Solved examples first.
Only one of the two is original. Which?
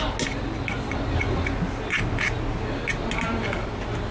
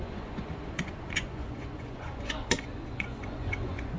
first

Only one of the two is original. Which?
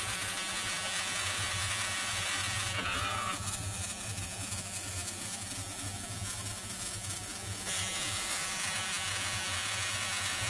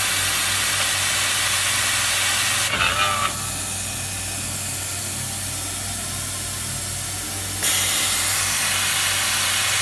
second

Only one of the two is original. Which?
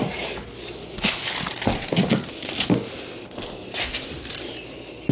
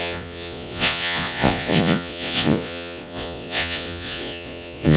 first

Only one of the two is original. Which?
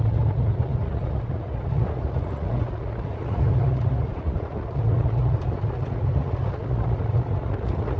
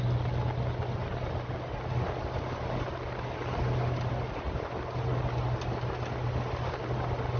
second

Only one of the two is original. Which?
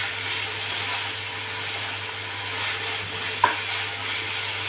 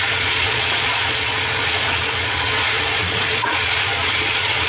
first